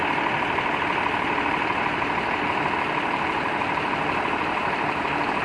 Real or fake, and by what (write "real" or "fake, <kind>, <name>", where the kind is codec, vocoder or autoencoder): real